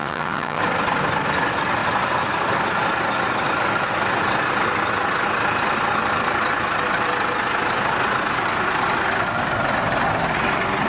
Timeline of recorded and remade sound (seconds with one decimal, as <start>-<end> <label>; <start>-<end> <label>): 0.0-0.6 remade; 0.6-10.9 recorded

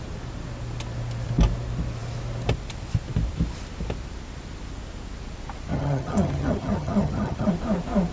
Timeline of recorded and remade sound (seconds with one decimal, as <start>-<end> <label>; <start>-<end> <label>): 0.0-5.7 recorded; 5.7-7.5 remade; 7.5-8.1 recorded

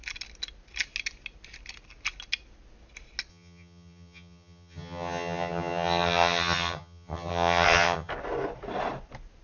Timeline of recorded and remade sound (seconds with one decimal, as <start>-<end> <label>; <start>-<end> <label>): 0.0-3.3 recorded; 3.3-8.1 remade; 8.1-9.4 recorded

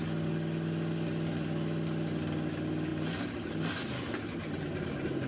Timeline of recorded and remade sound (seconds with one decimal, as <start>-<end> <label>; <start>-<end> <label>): 0.0-5.3 recorded

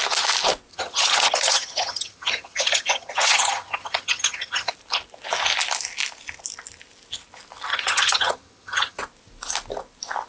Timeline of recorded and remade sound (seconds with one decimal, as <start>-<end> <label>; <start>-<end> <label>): 0.0-0.7 recorded; 0.7-4.7 remade; 4.7-7.7 recorded; 7.7-9.0 remade; 9.0-10.3 recorded

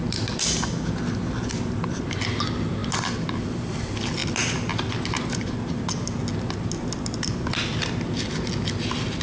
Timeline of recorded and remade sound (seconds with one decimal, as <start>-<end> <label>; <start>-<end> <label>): 0.0-9.2 recorded

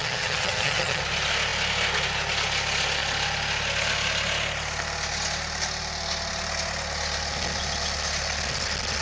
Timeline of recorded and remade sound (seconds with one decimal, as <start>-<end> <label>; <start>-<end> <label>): 0.0-1.0 remade; 1.0-9.0 recorded

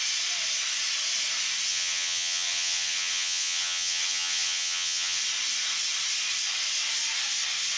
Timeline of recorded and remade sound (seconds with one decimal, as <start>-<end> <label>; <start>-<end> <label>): 0.0-1.7 recorded; 1.7-5.2 remade; 5.2-7.8 recorded